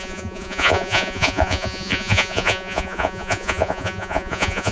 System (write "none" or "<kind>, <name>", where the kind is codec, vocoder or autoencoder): vocoder, Vocos